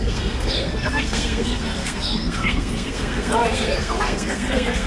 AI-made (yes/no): yes